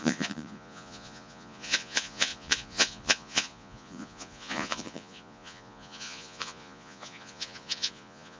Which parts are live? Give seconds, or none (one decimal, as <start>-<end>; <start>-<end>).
none